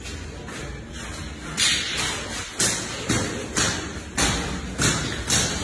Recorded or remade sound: recorded